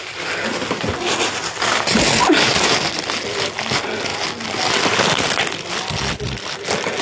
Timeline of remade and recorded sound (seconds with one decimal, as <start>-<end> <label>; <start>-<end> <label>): 0.0-7.0 recorded